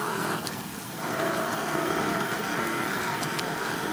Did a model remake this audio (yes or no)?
yes